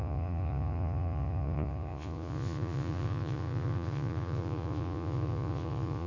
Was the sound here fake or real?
fake